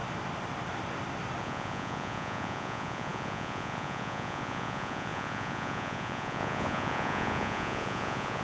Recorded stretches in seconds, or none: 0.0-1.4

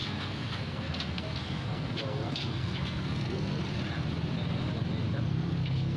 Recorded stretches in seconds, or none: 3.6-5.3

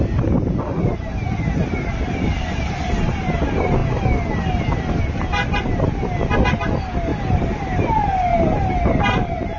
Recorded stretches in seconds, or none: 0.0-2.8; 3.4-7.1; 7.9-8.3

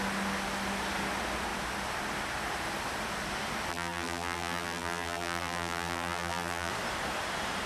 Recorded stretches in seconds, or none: 0.0-3.7; 6.7-7.7